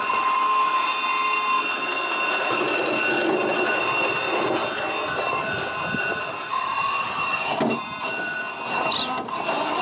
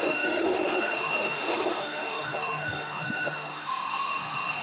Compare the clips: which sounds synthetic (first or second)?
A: second